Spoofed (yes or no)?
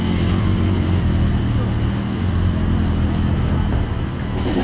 no